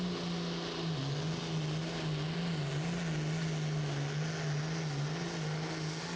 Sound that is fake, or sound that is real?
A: real